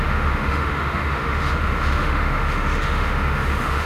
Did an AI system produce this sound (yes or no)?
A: yes